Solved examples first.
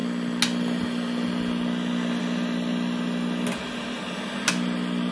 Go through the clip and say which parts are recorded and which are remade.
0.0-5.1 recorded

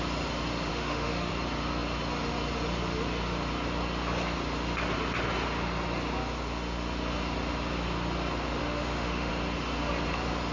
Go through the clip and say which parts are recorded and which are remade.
0.0-0.7 recorded; 0.7-1.3 remade; 1.3-8.6 recorded; 8.6-9.3 remade; 9.3-10.5 recorded

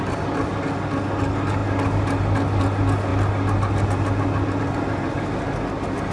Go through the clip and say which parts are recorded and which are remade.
0.0-6.1 recorded